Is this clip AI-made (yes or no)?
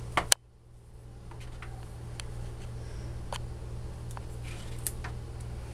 no